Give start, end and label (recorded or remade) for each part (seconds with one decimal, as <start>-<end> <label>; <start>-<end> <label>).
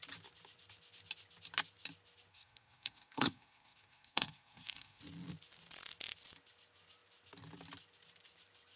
0.0-2.3 recorded; 2.3-5.0 remade; 5.0-8.8 recorded